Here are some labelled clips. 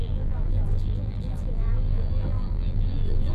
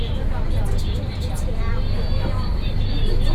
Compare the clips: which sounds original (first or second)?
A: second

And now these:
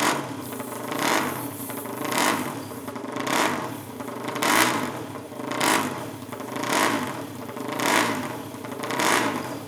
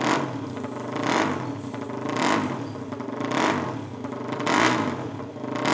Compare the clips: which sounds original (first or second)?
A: second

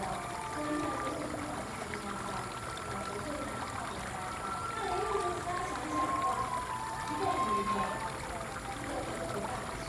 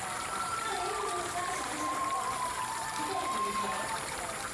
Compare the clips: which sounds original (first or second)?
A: first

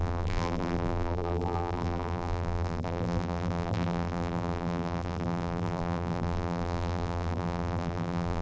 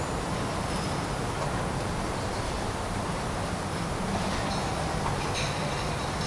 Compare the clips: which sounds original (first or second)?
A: second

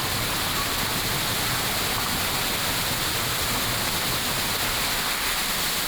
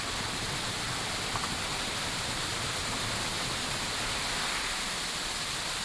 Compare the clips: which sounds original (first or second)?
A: first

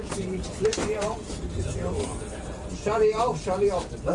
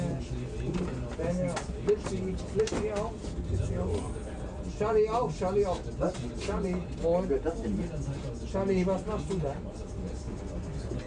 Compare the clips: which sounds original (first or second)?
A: second